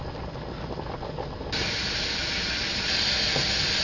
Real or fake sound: real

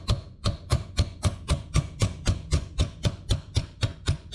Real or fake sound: fake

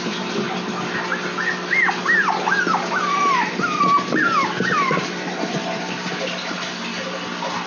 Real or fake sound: real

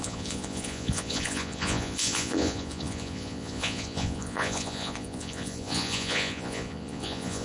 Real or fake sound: fake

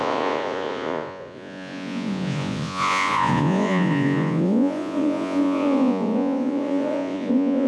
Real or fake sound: fake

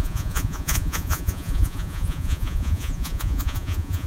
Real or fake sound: fake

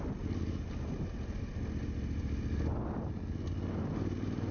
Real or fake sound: real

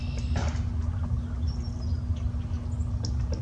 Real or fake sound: real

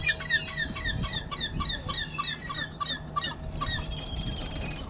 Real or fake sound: real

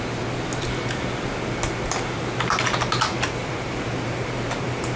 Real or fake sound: real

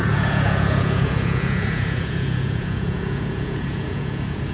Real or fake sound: fake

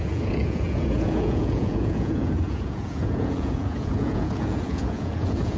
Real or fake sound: fake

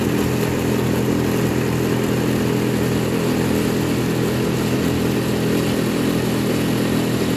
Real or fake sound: real